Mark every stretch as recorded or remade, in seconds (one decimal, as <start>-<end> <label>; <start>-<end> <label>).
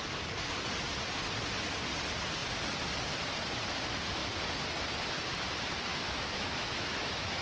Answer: 0.0-5.9 recorded; 5.9-7.4 remade